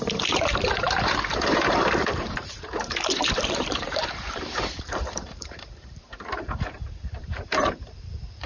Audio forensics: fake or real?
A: fake